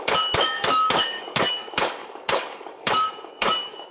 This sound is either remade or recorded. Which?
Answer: remade